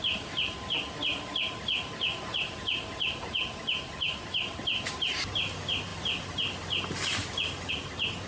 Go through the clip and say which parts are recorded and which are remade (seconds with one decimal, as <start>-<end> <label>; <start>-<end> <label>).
0.0-8.3 recorded